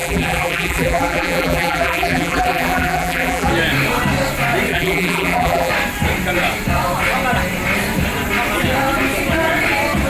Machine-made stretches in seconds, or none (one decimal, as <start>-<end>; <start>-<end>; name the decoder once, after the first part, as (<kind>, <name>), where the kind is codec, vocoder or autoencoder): 0.0-3.5 (vocoder, BigVGAN v2); 4.7-5.7